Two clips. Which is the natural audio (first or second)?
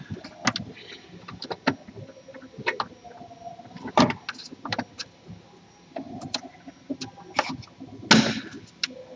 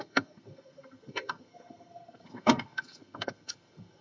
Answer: first